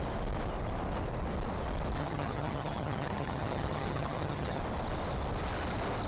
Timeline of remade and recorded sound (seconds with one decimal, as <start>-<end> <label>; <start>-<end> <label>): 0.0-2.0 recorded; 2.0-4.6 remade; 4.6-6.1 recorded